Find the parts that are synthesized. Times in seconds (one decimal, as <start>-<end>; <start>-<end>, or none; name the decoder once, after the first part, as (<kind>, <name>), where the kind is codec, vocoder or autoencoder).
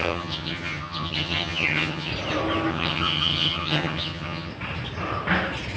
0.0-2.1 (vocoder, HiFi-GAN); 2.7-4.5